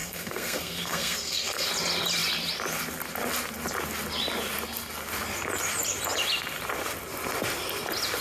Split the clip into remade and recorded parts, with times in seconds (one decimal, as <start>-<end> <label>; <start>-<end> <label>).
0.0-1.7 remade; 1.7-8.2 recorded